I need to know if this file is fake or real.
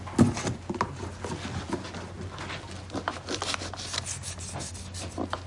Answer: real